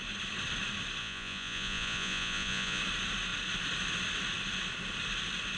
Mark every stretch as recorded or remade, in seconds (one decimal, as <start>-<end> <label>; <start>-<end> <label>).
0.0-1.0 recorded; 1.0-2.8 remade; 2.8-5.6 recorded